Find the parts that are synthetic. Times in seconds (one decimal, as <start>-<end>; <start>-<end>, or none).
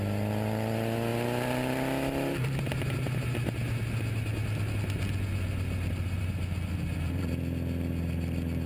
none